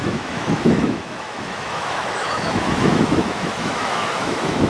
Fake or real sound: fake